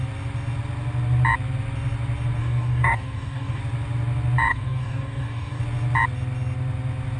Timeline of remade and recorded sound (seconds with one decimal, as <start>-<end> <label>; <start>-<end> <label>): 0.0-2.4 recorded; 2.4-3.6 remade; 3.6-4.5 recorded; 4.5-5.6 remade; 5.6-7.2 recorded